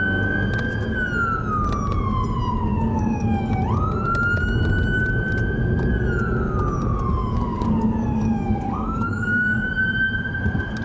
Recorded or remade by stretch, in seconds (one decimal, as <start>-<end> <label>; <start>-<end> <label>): 0.0-2.7 recorded; 2.7-3.5 remade; 3.5-7.2 recorded; 7.2-9.8 remade; 9.8-10.8 recorded